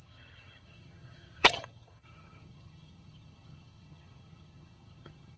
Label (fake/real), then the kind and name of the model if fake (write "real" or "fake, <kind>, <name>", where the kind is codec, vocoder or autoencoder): fake, vocoder, HiFi-GAN